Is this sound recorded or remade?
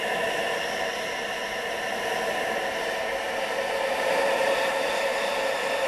recorded